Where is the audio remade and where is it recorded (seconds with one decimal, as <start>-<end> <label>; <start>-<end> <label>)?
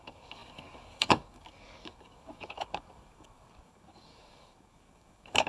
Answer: 0.0-5.5 remade